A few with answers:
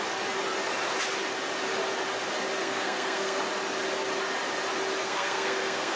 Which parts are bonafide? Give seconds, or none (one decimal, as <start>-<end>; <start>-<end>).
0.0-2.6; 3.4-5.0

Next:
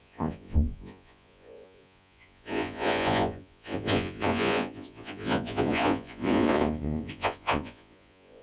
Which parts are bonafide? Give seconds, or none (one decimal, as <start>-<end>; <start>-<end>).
none

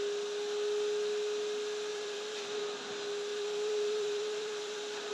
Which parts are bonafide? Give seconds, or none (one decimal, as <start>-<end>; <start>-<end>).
0.0-1.9; 2.6-3.3